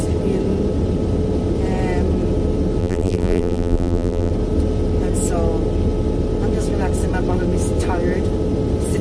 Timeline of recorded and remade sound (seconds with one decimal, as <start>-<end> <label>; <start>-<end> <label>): 0.0-2.8 recorded; 2.8-4.3 remade; 4.3-9.0 recorded